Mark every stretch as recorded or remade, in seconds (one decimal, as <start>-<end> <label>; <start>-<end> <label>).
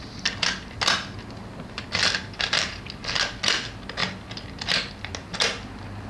0.0-6.1 recorded